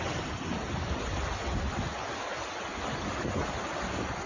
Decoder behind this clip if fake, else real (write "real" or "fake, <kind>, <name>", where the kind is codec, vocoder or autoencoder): real